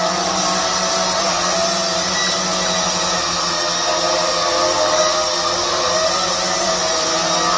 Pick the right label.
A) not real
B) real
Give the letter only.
B